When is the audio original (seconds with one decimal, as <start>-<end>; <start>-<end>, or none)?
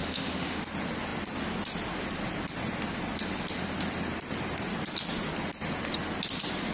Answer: 0.6-6.7